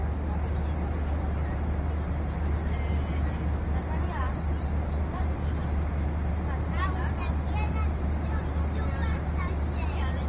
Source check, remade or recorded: recorded